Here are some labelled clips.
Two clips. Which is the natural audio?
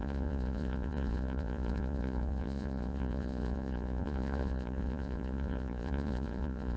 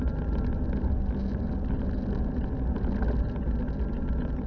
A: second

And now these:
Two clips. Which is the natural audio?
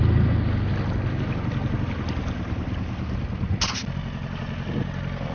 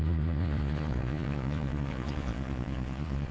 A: first